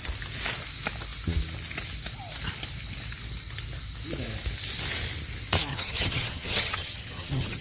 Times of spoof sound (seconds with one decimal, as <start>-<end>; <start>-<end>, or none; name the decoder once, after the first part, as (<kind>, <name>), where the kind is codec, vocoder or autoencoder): 5.7-7.6 (vocoder, HiFi-GAN)